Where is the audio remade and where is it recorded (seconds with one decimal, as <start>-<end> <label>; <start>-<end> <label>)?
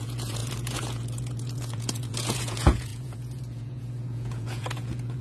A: 0.0-5.2 remade